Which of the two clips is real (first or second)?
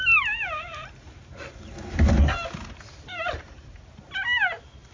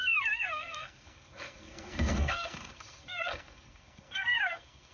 first